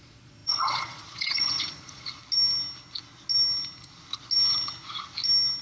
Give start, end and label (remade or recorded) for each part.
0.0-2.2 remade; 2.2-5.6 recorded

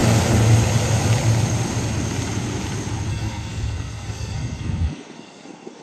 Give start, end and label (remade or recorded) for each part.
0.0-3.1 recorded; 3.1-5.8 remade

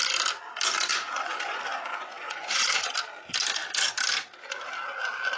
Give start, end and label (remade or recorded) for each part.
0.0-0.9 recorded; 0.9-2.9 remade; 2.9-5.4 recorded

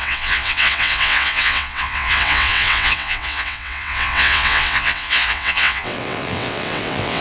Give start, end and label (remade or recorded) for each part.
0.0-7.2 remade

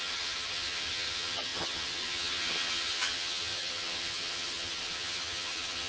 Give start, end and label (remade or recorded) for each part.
0.0-5.9 remade

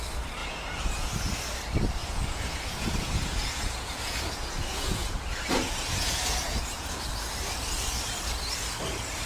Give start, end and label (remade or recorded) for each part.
0.0-0.4 recorded; 0.4-1.1 remade; 1.1-2.0 recorded; 2.0-7.0 remade; 7.0-9.3 recorded

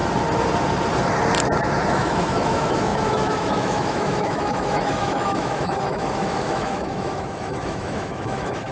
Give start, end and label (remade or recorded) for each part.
0.0-1.9 recorded; 1.9-8.7 remade